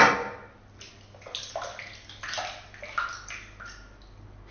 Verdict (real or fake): real